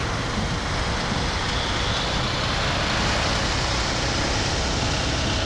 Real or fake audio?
real